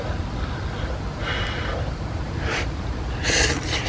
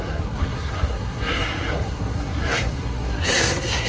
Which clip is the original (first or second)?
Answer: first